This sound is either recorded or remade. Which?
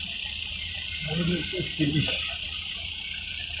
remade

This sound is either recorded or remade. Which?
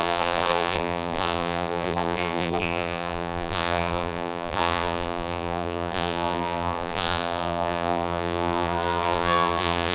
remade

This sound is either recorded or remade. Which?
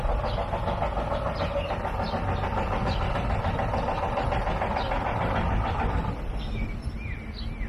recorded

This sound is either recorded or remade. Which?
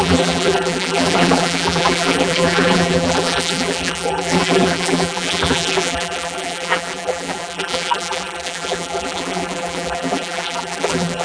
remade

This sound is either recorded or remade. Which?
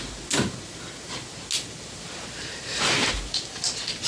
recorded